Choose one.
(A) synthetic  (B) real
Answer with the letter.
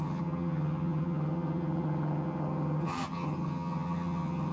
A